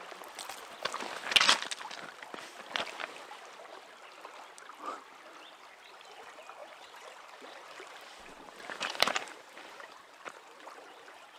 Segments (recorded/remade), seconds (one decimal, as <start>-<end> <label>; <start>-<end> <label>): 0.0-6.6 recorded; 6.6-11.4 remade